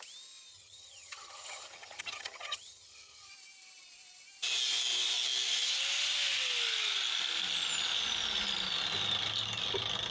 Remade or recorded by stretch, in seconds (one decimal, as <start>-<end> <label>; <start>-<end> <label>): 0.0-0.5 recorded; 0.5-3.3 remade; 3.3-10.1 recorded